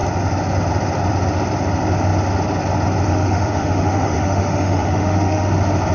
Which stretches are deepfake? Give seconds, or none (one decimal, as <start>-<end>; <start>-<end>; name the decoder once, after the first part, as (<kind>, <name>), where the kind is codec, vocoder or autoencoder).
3.1-5.5 (autoencoder, DAC-VAE)